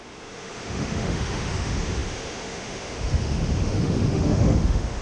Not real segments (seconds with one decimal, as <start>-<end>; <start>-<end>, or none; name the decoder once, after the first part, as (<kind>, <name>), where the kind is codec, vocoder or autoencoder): 0.0-5.0 (autoencoder, DAC-VAE)